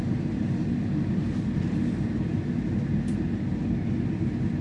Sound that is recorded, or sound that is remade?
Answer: recorded